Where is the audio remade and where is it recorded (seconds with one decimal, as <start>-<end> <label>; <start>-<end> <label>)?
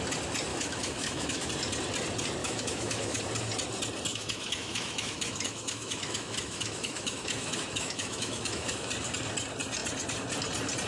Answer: 0.0-0.5 recorded; 0.5-1.5 remade; 1.5-2.4 recorded; 2.4-3.2 remade; 3.2-4.1 recorded; 4.1-8.9 remade; 8.9-10.9 recorded